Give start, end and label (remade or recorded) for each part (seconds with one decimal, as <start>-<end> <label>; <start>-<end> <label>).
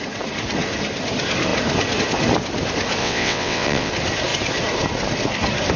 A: 0.0-3.0 recorded; 3.0-3.9 remade; 3.9-5.8 recorded